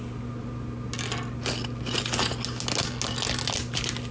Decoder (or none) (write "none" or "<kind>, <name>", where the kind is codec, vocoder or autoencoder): none